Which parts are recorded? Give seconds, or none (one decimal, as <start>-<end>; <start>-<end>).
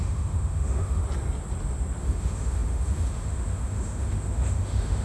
1.0-2.0